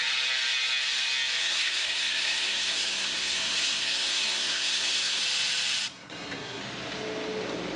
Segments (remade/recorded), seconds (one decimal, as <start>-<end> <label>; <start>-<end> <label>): 0.0-1.4 recorded; 1.4-5.2 remade; 5.2-5.9 recorded; 5.9-6.6 remade; 6.6-7.8 recorded